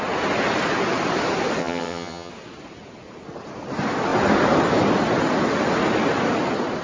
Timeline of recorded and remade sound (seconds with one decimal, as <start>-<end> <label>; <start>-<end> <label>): 0.0-1.6 recorded; 1.6-2.3 remade; 2.3-6.8 recorded